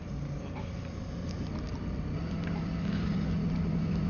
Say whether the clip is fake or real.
real